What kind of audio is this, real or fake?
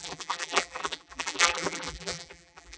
fake